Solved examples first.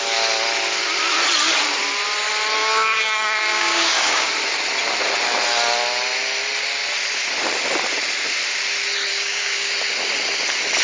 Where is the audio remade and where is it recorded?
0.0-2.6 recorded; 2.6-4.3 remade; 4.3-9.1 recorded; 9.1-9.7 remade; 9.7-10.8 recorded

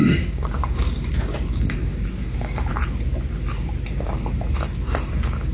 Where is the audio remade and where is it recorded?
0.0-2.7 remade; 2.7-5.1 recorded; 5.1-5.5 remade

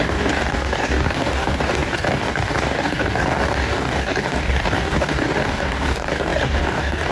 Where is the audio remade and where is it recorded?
0.0-7.1 remade

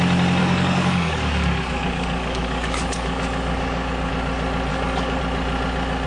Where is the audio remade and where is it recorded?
0.0-0.4 recorded; 0.4-4.1 remade; 4.1-4.7 recorded; 4.7-5.2 remade; 5.2-6.1 recorded

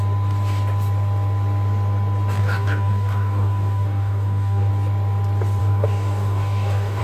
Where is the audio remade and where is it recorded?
0.0-2.4 recorded; 2.4-4.7 remade; 4.7-5.6 recorded; 5.6-7.0 remade

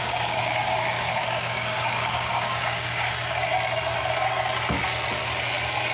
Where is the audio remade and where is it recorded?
0.0-3.1 remade; 3.1-5.9 recorded

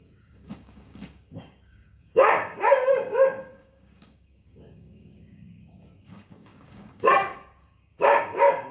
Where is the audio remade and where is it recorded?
0.0-8.7 remade